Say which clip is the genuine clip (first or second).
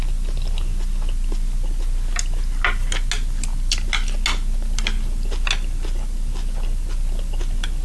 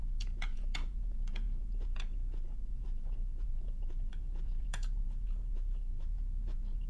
first